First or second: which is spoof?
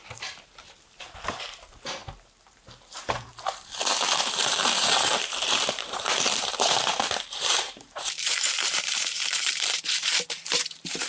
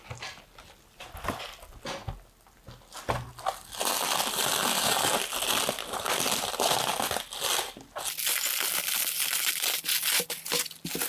first